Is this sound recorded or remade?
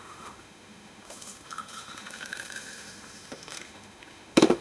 remade